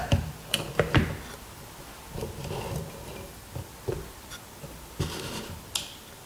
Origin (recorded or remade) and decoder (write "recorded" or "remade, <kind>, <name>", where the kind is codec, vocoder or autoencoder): recorded